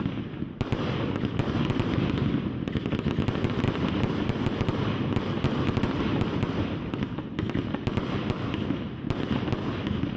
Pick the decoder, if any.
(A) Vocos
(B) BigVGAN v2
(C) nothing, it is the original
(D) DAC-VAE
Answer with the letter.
C